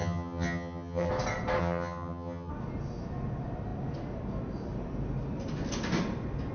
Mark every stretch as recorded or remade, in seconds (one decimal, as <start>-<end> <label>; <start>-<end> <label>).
0.0-1.1 remade; 1.1-1.6 recorded; 1.6-2.5 remade; 2.5-6.5 recorded

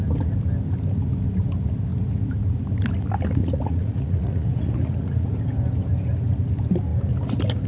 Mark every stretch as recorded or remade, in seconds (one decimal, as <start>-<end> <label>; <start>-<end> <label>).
0.0-3.4 recorded; 3.4-5.3 remade; 5.3-7.7 recorded

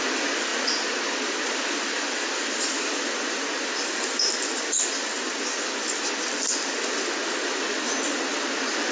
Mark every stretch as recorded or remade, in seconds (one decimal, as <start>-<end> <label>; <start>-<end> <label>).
0.0-8.9 recorded

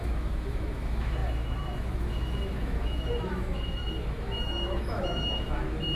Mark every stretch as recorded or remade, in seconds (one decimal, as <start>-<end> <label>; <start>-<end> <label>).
0.0-6.0 remade